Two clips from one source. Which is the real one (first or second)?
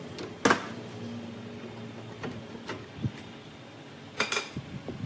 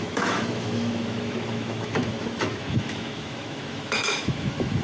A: first